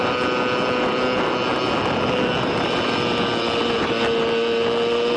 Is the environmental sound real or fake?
real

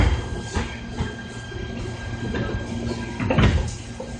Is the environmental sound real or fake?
real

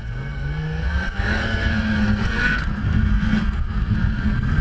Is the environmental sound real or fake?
fake